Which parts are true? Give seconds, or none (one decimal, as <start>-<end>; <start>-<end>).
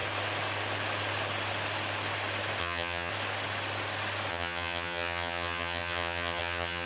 0.0-2.6; 3.1-4.3